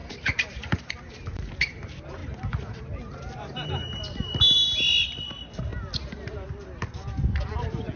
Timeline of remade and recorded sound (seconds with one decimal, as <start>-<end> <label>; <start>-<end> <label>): 0.0-1.5 remade; 1.5-2.2 recorded; 2.2-3.7 remade; 3.7-8.0 recorded